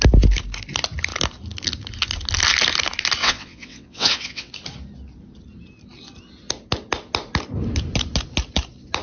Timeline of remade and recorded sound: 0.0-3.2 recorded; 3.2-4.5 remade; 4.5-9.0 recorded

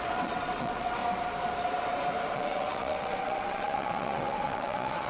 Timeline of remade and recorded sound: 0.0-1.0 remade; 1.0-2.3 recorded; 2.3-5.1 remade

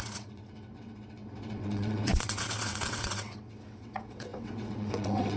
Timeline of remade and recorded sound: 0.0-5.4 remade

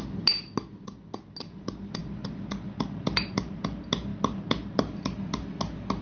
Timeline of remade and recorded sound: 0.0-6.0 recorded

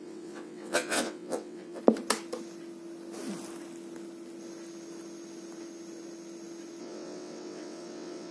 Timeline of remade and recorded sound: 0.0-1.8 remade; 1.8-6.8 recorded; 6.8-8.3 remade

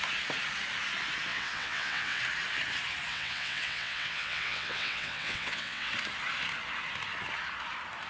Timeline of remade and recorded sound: 0.0-1.3 recorded; 1.3-2.2 remade; 2.2-3.1 recorded; 3.1-5.9 remade; 5.9-8.1 recorded